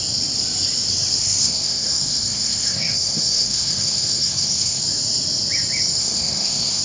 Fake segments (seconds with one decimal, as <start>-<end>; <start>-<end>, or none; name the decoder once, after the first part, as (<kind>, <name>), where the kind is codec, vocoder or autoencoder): 1.2-4.8 (codec, SNAC); 6.0-6.8